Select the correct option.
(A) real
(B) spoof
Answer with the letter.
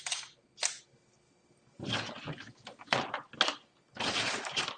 A